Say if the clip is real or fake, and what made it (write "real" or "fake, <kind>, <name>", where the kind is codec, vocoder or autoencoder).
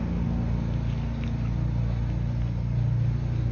real